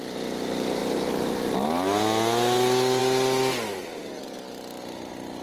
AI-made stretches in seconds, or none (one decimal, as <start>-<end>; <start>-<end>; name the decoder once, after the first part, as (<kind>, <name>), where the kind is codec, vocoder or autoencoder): none